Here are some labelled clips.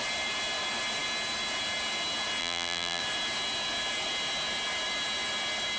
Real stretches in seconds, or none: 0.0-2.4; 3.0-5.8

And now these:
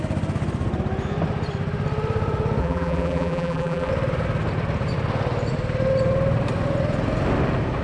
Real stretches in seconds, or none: 0.0-2.6; 3.9-7.8